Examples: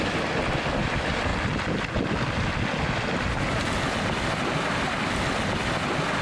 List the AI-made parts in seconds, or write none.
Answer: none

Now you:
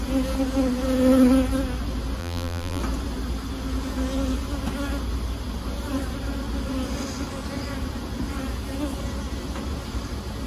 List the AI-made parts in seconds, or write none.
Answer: 2.2-2.8 (vocoder, BigVGAN v2)

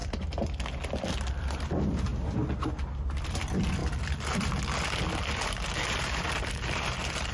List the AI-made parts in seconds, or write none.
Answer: 0.9-2.1 (vocoder, BigVGAN v2); 3.2-7.3

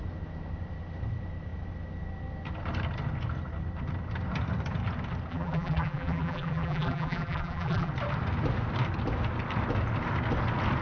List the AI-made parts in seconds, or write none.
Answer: 5.3-7.9 (vocoder, BigVGAN v2)

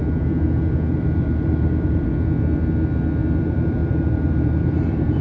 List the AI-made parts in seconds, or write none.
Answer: 0.9-2.1 (vocoder, BigVGAN v2); 3.4-5.2